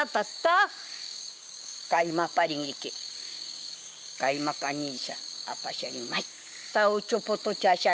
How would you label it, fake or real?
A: fake